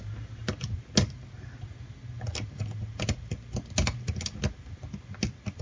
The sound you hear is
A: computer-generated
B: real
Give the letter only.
B